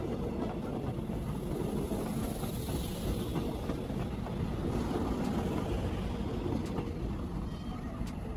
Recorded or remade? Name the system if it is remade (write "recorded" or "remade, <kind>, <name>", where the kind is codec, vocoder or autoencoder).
recorded